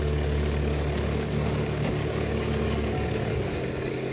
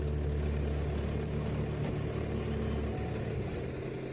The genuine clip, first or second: second